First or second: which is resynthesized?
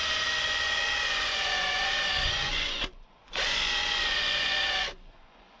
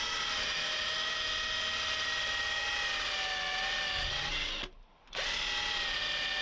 first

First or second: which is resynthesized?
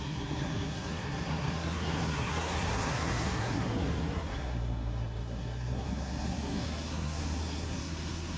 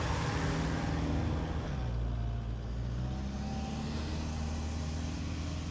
first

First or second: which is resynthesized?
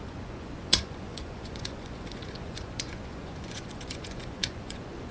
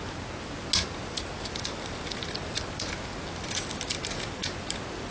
first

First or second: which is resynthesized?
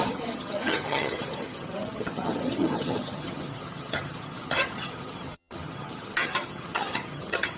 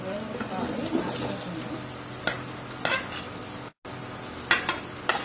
first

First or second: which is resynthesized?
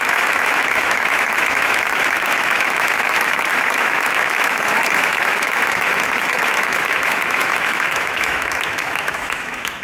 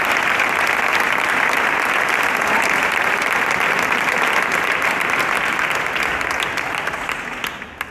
first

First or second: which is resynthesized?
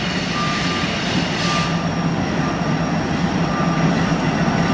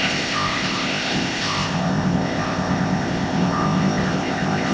second